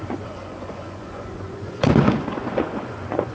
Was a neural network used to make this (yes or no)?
yes